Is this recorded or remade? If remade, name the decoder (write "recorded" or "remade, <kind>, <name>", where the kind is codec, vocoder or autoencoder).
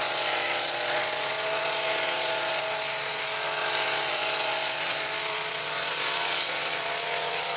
remade, vocoder, Vocos